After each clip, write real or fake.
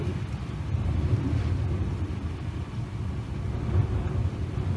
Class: real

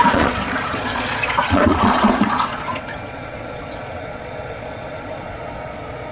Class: fake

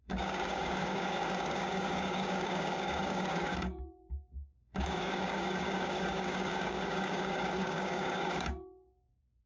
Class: fake